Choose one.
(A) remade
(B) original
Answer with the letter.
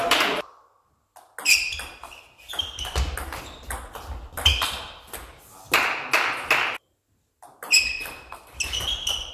B